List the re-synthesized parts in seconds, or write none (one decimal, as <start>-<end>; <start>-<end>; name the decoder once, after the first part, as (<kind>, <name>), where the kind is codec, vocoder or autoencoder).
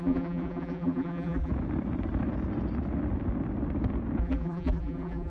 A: 0.0-1.5 (vocoder, BigVGAN v2); 4.2-5.3